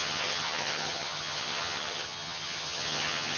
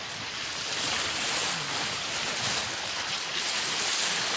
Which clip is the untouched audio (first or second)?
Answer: second